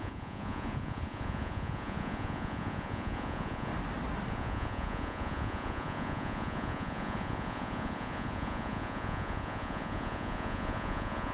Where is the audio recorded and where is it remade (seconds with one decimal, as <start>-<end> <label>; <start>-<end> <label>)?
0.0-3.7 remade; 3.7-4.3 recorded; 4.3-11.3 remade